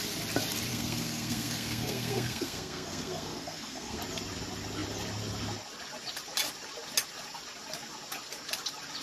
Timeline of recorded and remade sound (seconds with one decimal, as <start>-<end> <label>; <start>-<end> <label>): 0.0-0.7 recorded; 0.7-4.0 remade; 4.0-9.0 recorded